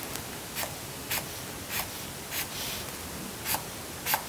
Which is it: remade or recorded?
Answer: recorded